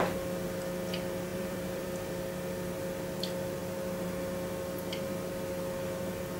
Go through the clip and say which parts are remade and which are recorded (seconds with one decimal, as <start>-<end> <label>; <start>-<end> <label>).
0.0-1.3 recorded; 1.3-2.1 remade; 2.1-6.4 recorded